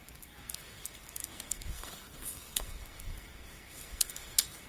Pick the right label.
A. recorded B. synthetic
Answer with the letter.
B